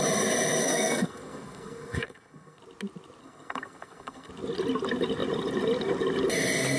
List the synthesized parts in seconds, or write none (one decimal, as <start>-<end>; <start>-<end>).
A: 0.6-2.6; 3.2-4.3